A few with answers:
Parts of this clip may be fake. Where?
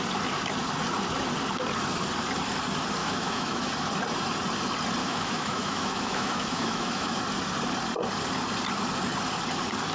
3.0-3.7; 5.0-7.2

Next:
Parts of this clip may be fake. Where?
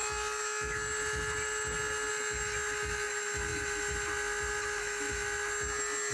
none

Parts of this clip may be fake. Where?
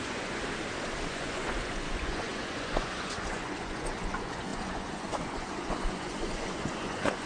0.0-0.4; 1.1-7.3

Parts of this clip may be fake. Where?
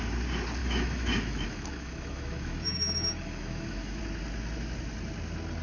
0.6-4.0